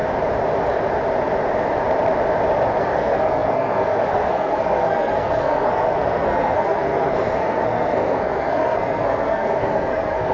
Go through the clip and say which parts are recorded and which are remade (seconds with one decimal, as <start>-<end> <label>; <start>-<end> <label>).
0.0-2.8 recorded; 2.8-10.3 remade